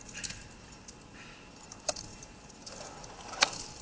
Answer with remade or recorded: recorded